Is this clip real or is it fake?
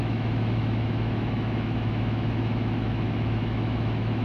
fake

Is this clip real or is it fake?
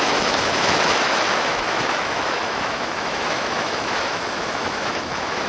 fake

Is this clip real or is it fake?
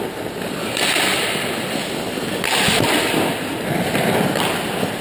real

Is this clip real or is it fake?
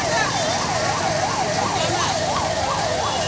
real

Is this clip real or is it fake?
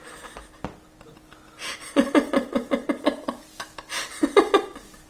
real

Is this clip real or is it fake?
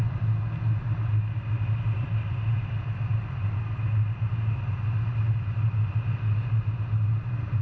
real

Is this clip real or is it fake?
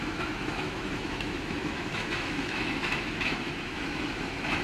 fake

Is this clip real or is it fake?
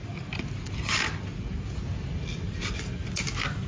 real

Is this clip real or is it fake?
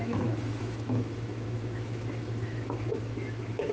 fake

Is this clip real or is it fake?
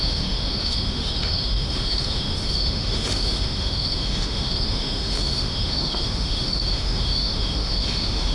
fake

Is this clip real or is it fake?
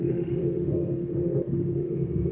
fake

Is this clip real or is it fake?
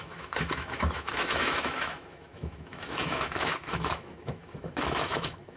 fake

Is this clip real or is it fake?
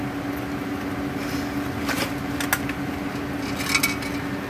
real